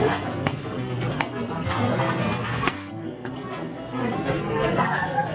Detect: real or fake fake